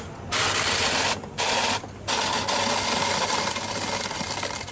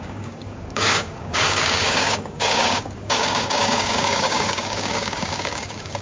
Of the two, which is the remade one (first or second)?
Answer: second